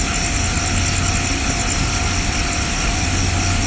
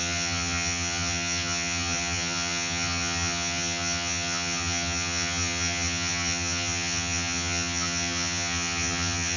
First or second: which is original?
first